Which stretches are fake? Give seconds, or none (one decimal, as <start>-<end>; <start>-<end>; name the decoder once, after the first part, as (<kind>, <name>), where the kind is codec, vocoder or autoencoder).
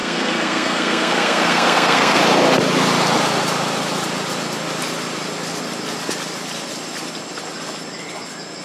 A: 0.0-2.2 (codec, SNAC)